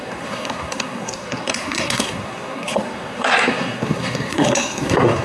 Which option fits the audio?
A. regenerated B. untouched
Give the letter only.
A